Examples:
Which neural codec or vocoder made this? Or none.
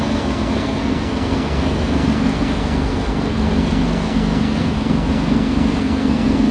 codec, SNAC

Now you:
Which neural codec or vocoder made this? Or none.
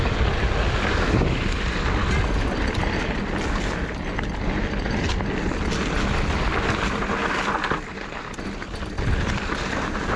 none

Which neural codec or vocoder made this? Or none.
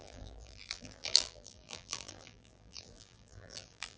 vocoder, BigVGAN v2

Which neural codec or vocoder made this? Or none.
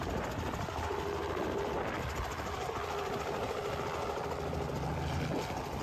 none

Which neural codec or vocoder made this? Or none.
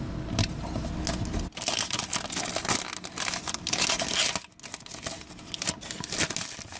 none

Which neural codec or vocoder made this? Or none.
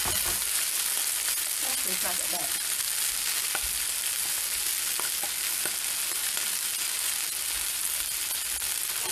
none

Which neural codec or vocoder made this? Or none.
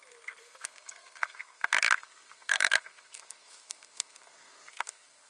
codec, SNAC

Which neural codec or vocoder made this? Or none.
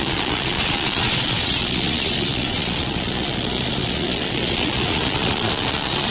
vocoder, Vocos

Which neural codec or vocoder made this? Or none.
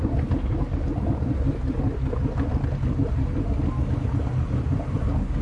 none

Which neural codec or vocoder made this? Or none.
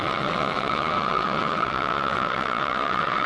vocoder, WaveNeXt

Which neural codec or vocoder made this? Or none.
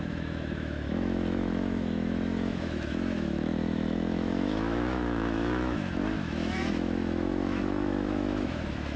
autoencoder, DAC-VAE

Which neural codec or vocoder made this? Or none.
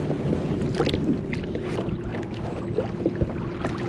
none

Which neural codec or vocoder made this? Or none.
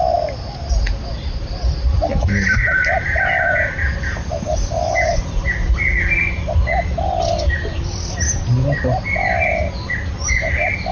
none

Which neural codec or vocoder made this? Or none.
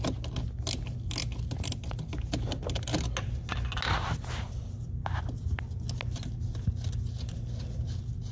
none